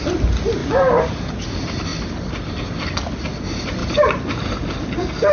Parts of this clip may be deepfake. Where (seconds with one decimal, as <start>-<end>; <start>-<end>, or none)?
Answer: none